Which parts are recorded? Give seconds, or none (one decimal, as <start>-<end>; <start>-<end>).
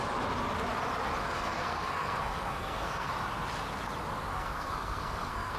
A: 0.0-1.2; 3.1-4.3